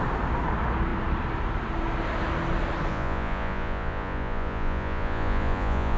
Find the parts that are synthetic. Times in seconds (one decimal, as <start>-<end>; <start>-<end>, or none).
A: 2.9-6.0